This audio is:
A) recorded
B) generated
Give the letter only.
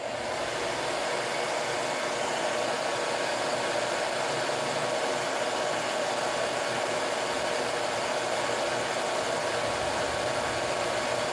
A